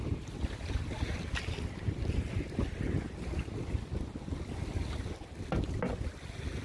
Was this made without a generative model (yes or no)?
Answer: yes